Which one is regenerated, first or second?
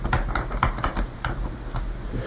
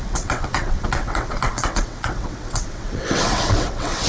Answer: second